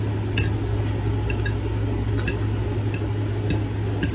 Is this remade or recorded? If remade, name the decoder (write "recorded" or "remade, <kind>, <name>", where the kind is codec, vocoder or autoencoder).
recorded